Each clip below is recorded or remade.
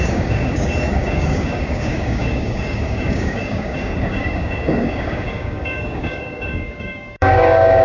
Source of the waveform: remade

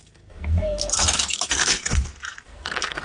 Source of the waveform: remade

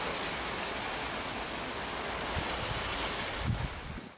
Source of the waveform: recorded